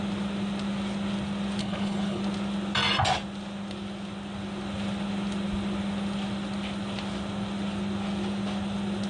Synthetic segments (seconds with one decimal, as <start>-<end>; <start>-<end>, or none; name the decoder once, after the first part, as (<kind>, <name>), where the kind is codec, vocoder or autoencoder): 1.6-2.2 (codec, HILCodec)